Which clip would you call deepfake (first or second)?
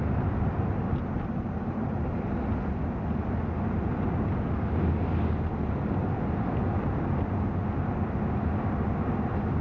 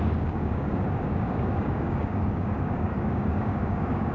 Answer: second